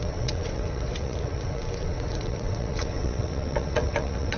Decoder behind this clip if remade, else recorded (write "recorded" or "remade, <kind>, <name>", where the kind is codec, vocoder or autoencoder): remade, vocoder, WaveNeXt